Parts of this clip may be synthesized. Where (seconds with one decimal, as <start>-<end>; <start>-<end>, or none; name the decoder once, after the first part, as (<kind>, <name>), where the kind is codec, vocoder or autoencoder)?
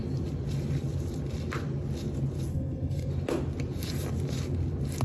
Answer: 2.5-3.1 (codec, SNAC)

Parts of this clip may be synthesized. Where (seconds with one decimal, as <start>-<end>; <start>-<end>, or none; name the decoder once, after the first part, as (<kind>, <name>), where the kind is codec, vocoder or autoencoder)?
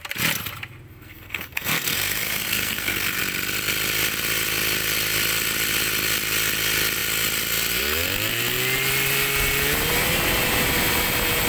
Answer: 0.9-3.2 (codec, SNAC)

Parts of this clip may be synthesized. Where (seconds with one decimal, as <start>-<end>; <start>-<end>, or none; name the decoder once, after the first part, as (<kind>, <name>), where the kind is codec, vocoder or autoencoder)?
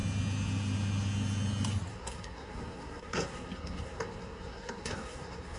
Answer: 1.9-5.6 (codec, SNAC)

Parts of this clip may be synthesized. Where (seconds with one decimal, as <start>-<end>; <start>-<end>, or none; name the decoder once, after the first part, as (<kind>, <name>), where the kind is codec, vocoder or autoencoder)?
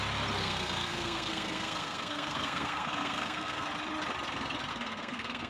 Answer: 0.4-3.7 (codec, SNAC); 4.7-5.5